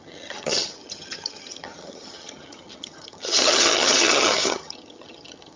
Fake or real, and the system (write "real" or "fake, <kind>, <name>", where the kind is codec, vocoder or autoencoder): fake, vocoder, HiFi-GAN